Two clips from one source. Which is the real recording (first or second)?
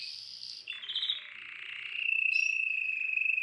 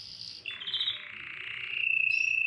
second